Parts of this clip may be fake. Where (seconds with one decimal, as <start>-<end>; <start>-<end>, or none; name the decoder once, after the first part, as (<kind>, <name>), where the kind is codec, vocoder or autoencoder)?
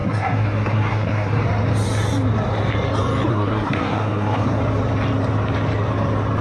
0.0-1.4 (codec, SNAC); 3.3-4.6